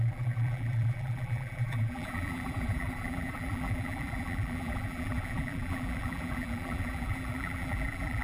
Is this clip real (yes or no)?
no